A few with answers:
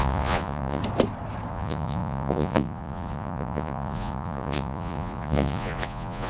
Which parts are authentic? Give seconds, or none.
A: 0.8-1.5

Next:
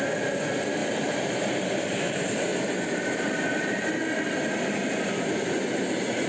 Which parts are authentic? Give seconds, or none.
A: 0.0-0.8; 1.6-2.5; 3.3-6.3

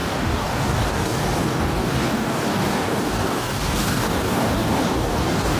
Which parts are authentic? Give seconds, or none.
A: none

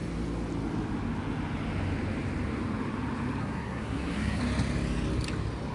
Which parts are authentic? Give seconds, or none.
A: 0.0-3.4; 4.4-5.7

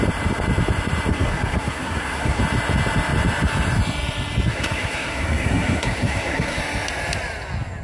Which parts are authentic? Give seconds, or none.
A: 0.0-1.1; 2.4-4.5; 6.6-7.8

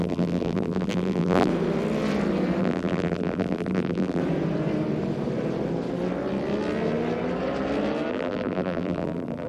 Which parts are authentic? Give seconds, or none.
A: 1.5-2.6; 4.2-8.1